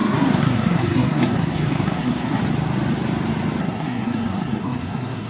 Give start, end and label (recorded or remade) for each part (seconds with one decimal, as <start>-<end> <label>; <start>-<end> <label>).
0.0-2.4 remade; 2.4-3.6 recorded; 3.6-5.3 remade